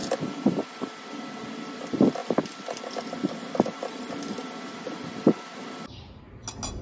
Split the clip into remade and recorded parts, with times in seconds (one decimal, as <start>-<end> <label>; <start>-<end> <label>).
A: 0.0-6.8 recorded